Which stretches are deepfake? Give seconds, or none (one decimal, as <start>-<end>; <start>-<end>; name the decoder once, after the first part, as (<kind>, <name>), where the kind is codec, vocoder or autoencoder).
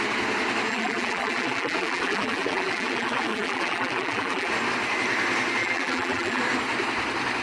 0.7-4.5 (vocoder, BigVGAN v2); 5.6-6.4